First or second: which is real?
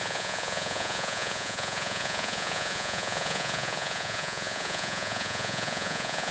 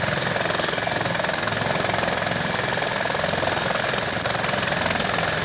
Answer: second